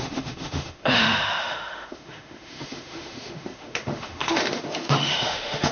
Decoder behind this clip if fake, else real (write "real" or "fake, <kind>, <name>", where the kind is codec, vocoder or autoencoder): fake, autoencoder, DAC-VAE